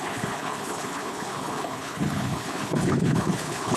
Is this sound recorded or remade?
remade